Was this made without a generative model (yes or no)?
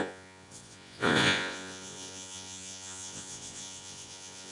no